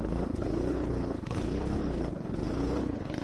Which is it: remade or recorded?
remade